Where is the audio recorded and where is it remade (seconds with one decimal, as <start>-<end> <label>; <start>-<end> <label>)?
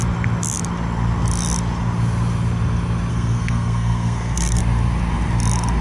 0.0-3.1 recorded; 3.1-4.6 remade; 4.6-5.8 recorded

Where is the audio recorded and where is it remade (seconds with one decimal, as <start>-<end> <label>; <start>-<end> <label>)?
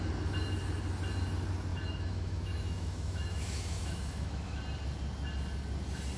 0.0-1.7 recorded; 1.7-4.6 remade; 4.6-6.2 recorded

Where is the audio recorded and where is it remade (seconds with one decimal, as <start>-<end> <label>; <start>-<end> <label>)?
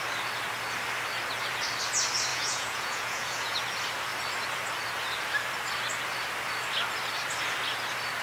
0.0-2.3 recorded; 2.3-3.6 remade; 3.6-8.2 recorded